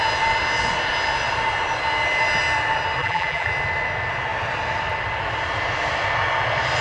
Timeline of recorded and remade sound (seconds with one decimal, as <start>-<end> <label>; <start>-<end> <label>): 0.0-3.0 recorded; 3.0-3.5 remade; 3.5-6.8 recorded